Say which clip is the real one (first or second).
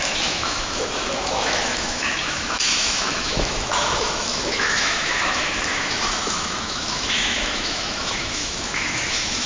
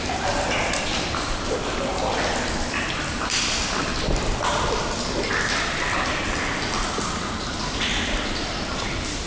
second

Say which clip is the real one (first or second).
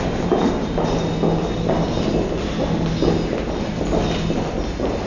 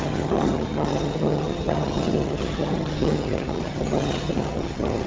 first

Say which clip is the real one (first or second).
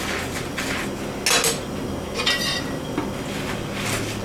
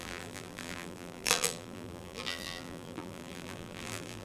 first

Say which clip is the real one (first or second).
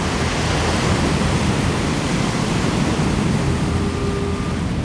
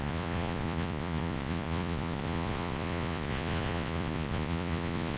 first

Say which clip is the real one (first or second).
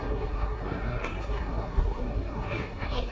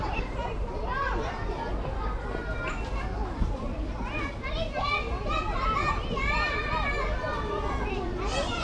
second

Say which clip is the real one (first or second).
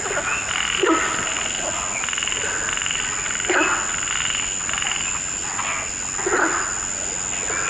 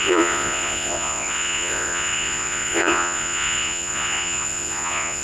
first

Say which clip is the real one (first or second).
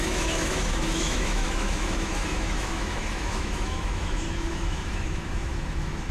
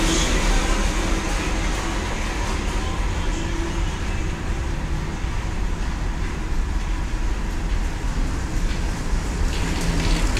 second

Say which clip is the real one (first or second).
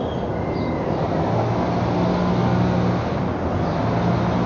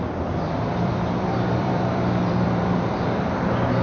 first